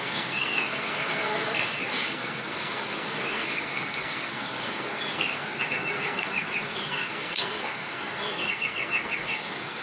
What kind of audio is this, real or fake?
fake